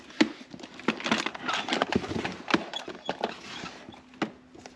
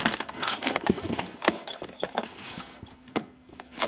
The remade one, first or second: second